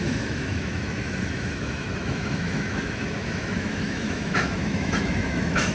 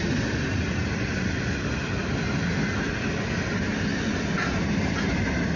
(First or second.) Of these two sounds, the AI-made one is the first